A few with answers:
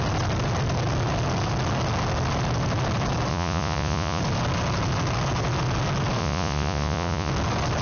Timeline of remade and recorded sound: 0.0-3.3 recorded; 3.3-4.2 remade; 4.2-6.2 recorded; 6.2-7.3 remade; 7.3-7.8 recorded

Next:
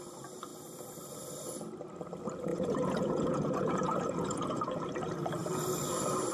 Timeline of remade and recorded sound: 0.0-2.5 recorded; 2.5-4.8 remade; 4.8-6.3 recorded

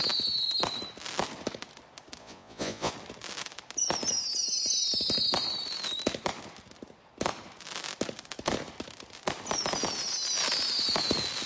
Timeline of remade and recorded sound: 0.0-2.2 recorded; 2.2-2.9 remade; 2.9-11.5 recorded

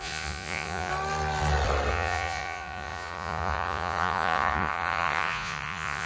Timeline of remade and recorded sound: 0.0-0.9 remade; 0.9-1.9 recorded; 1.9-6.1 remade

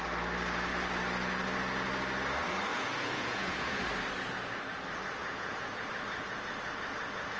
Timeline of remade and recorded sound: 0.0-2.7 recorded; 2.7-3.8 remade; 3.8-5.2 recorded; 5.2-5.8 remade; 5.8-7.4 recorded